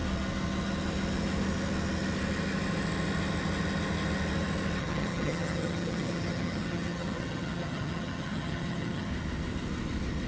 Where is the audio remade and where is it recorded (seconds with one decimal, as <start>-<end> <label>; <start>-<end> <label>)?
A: 0.0-4.8 recorded; 4.8-9.1 remade; 9.1-10.3 recorded